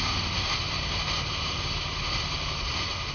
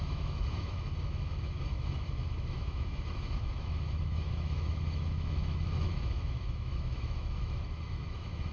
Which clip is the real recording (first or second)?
first